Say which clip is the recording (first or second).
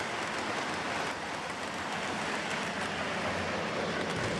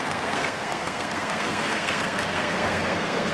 first